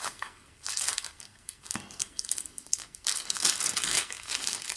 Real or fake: fake